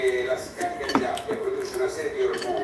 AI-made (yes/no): yes